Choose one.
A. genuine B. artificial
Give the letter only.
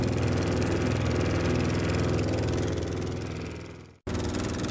A